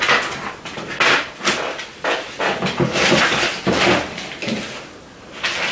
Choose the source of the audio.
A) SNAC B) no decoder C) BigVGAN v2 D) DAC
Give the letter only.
B